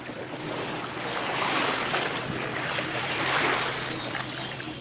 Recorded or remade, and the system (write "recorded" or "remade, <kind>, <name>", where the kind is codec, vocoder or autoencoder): remade, vocoder, BigVGAN v2